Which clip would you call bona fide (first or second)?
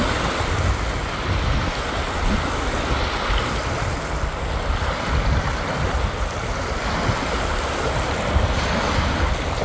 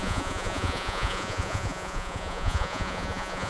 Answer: first